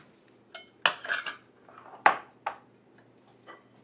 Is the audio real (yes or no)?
yes